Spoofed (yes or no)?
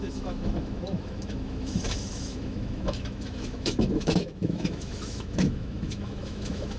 yes